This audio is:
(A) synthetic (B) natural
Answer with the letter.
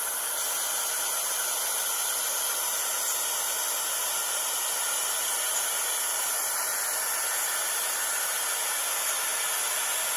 B